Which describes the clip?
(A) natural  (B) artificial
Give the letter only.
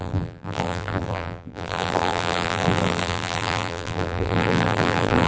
B